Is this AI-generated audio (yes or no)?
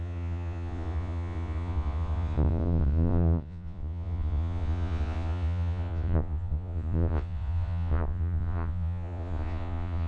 yes